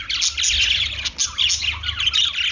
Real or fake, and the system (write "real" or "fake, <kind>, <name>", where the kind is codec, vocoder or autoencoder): real